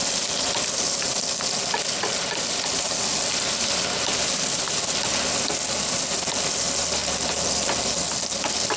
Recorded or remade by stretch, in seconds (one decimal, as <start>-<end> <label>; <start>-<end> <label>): 0.0-8.8 recorded